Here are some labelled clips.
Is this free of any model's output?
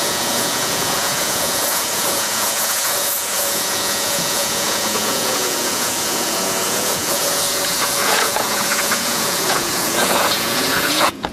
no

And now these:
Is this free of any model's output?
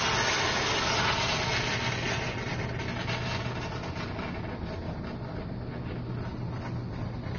yes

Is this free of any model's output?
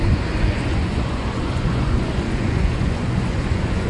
no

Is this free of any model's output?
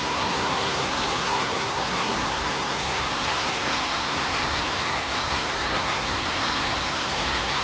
no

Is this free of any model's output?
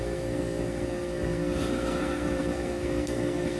no